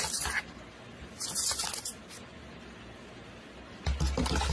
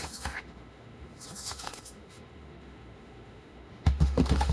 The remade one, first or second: second